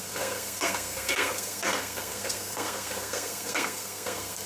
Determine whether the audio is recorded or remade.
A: remade